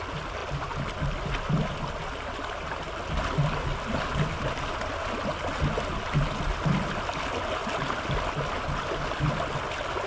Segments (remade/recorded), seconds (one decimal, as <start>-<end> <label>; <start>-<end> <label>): 0.0-10.1 recorded